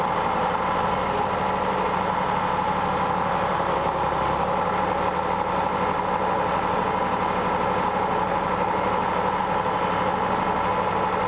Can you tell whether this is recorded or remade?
recorded